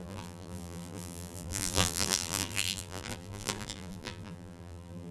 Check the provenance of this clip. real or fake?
fake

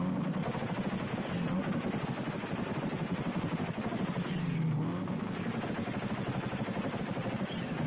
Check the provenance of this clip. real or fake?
real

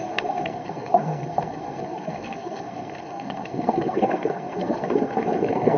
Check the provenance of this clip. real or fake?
fake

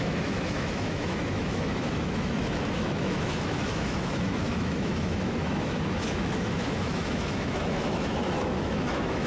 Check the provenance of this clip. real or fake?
fake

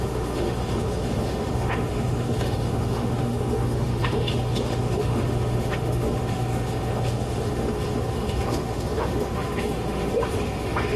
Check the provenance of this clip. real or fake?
fake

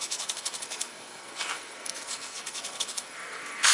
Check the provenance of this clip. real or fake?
fake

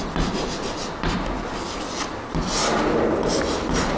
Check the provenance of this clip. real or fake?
real